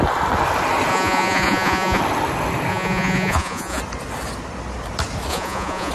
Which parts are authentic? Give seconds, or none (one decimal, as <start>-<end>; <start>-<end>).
0.0-0.9; 2.0-2.7; 3.8-5.3